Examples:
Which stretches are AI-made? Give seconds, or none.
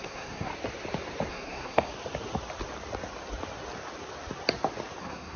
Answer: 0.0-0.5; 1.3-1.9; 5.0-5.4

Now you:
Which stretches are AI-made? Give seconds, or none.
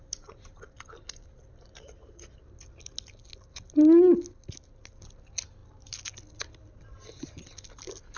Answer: none